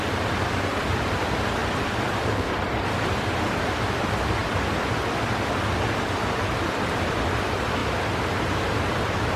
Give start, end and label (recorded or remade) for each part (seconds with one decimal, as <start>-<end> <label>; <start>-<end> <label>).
0.0-9.4 recorded